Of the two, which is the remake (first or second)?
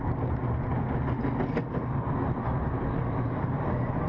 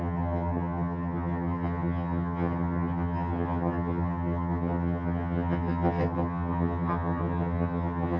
second